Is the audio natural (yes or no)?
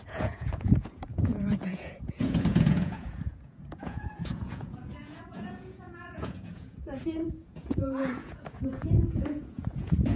no